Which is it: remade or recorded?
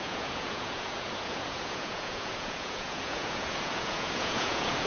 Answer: remade